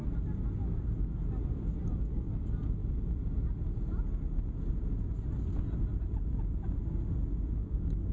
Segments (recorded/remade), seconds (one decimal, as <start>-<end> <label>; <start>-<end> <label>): 0.0-7.6 recorded; 7.6-8.1 remade